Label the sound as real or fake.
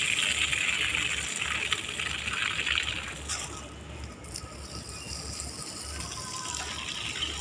real